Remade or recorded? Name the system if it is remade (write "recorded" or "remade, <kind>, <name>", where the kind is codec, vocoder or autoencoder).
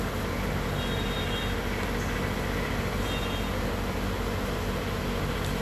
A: recorded